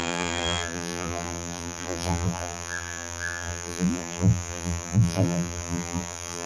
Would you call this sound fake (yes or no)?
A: yes